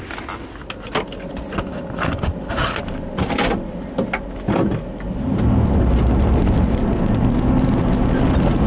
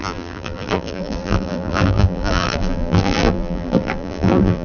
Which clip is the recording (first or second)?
first